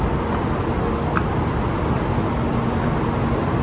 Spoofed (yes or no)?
no